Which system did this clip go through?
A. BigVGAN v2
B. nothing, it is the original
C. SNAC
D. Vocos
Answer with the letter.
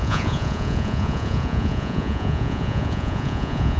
D